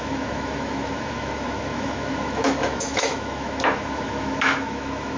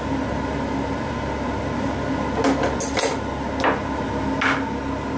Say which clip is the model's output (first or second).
first